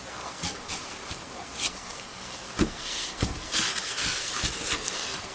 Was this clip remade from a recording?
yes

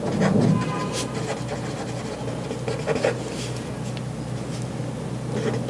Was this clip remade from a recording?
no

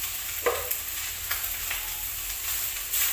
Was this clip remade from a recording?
no